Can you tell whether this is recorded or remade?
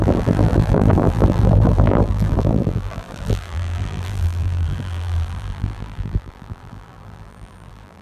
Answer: remade